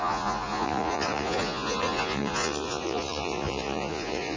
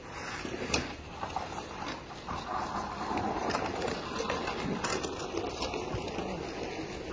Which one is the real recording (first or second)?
second